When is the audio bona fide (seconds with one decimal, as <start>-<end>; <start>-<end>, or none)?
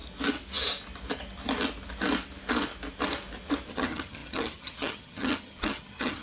0.0-3.7